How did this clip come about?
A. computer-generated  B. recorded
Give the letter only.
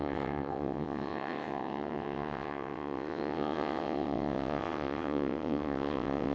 A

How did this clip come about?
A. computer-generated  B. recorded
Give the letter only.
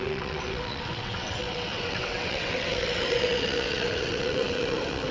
A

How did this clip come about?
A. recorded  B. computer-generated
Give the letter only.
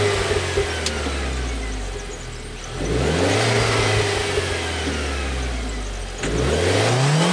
A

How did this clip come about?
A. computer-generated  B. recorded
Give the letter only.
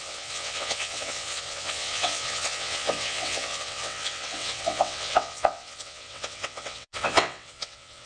A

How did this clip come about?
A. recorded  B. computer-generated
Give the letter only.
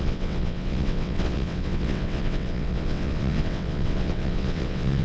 B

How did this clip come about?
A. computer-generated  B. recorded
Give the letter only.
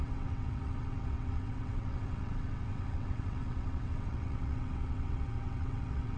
A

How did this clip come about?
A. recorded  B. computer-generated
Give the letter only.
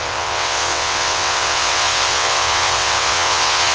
B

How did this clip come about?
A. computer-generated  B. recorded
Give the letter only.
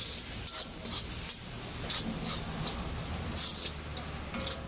B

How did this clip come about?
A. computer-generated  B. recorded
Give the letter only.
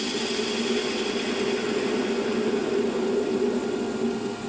B